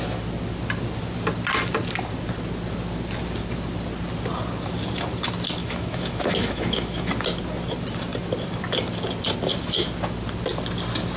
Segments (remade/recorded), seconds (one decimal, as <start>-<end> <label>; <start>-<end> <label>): 0.0-5.6 recorded; 5.6-7.1 remade; 7.1-11.2 recorded